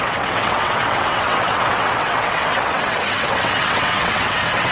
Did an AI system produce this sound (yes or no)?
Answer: yes